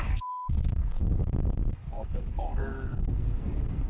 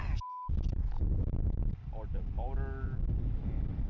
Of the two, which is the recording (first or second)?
second